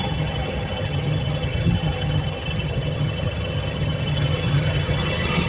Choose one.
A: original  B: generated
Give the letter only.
B